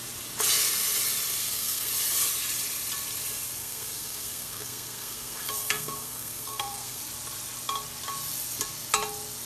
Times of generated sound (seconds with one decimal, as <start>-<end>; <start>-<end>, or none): 1.4-1.9; 3.6-7.0